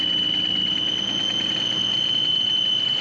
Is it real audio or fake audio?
real